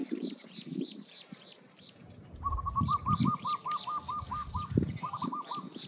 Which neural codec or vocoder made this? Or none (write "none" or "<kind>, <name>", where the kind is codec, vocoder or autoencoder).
vocoder, BigVGAN v2